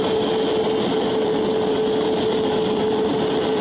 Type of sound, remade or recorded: recorded